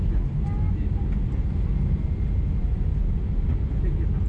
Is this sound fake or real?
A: real